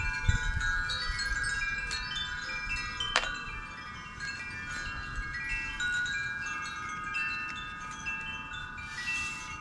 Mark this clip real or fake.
real